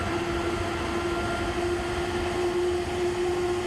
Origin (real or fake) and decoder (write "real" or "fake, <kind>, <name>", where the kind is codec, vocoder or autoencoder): real